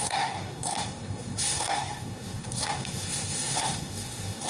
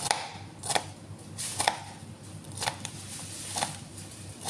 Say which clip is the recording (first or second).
second